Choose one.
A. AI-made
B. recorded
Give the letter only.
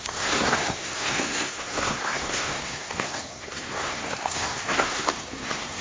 A